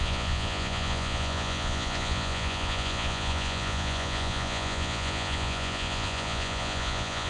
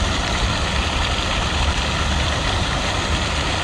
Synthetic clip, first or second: first